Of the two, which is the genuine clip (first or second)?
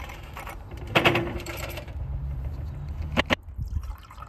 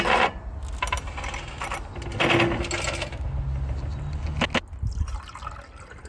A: second